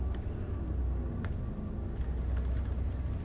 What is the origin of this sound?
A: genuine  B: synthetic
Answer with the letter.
A